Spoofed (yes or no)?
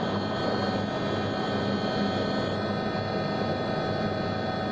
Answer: no